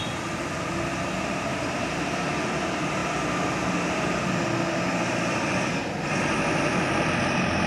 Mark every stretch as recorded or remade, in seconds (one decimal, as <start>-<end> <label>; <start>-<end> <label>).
0.0-1.5 recorded; 1.5-2.3 remade; 2.3-7.7 recorded